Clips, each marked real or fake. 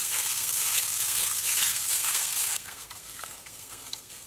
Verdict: fake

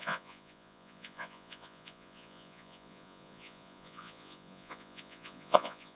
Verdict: fake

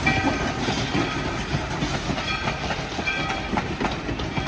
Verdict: real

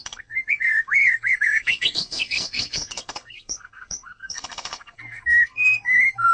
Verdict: fake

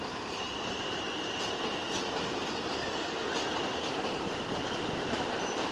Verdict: fake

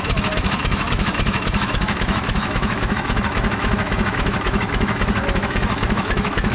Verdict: fake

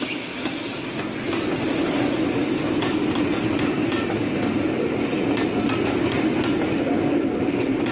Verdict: real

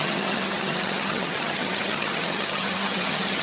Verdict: fake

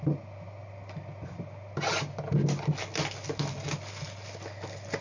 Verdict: real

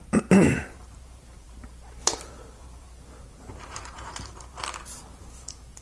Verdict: fake